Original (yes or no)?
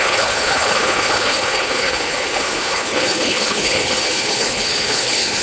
no